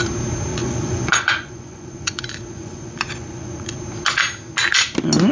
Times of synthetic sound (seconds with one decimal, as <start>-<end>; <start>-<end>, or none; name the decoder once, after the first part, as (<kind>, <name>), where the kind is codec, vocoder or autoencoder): 0.5-3.7 (vocoder, Vocos)